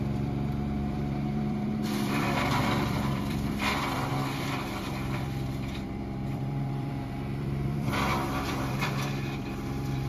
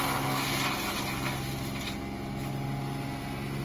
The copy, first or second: first